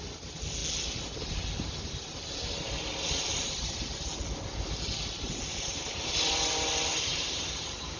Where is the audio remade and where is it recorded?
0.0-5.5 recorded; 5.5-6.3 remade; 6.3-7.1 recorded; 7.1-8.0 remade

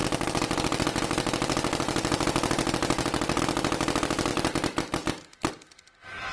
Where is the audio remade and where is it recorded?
0.0-3.4 remade; 3.4-4.3 recorded; 4.3-5.5 remade; 5.5-6.3 recorded

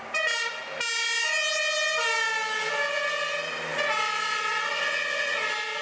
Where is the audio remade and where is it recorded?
0.0-3.7 recorded; 3.7-4.5 remade; 4.5-5.8 recorded

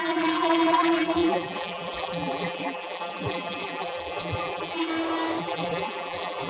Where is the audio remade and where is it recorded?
0.0-4.9 remade; 4.9-5.4 recorded; 5.4-6.5 remade